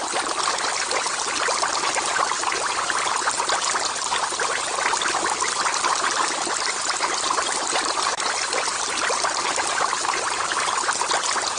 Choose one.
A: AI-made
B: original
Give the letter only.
B